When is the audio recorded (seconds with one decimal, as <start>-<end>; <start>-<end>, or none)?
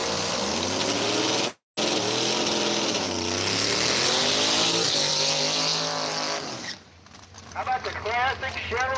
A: 0.0-9.0